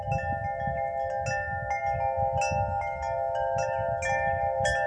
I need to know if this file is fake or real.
real